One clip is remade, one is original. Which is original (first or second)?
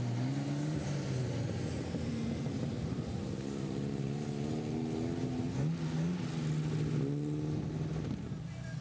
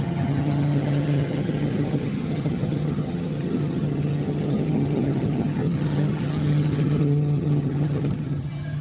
first